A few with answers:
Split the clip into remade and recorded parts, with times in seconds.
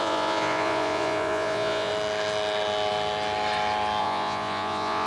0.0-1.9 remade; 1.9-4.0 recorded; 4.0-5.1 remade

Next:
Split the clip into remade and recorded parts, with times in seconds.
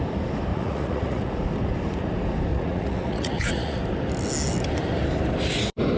0.0-0.5 recorded; 0.5-1.3 remade; 1.3-2.5 recorded; 2.5-3.8 remade; 3.8-6.0 recorded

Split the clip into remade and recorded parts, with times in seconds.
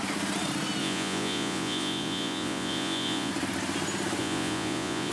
0.0-0.8 recorded; 0.8-3.3 remade; 3.3-4.2 recorded; 4.2-5.1 remade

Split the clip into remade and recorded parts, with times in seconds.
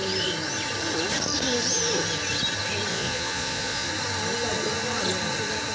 0.0-2.9 recorded; 2.9-3.9 remade; 3.9-5.7 recorded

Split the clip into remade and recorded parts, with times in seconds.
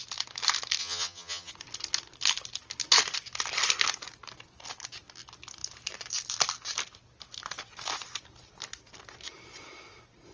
0.0-0.8 recorded; 0.8-1.5 remade; 1.5-10.3 recorded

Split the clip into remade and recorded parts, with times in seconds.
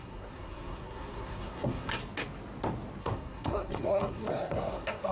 0.0-2.0 remade; 2.0-3.0 recorded; 3.0-5.1 remade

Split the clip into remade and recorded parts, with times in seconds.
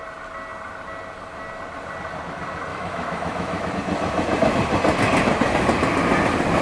0.0-2.7 recorded; 2.7-3.7 remade; 3.7-6.6 recorded